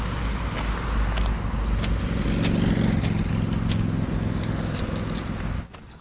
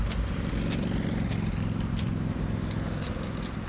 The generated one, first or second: second